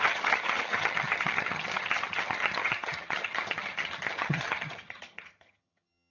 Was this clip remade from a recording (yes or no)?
yes